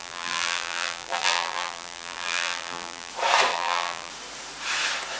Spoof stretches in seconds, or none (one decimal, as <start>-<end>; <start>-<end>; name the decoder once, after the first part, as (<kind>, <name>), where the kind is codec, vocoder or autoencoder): 0.0-3.1 (vocoder, BigVGAN v2); 3.5-4.1